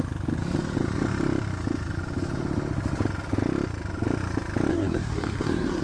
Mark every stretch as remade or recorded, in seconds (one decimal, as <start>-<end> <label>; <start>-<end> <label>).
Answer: 0.0-4.7 recorded; 4.7-5.8 remade